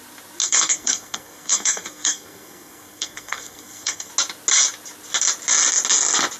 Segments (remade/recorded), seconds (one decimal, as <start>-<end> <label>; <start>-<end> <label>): 0.0-0.4 recorded; 0.4-4.1 remade; 4.1-6.4 recorded